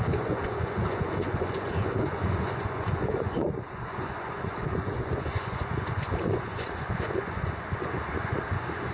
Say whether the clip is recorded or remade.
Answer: remade